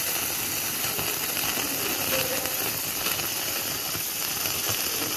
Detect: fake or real real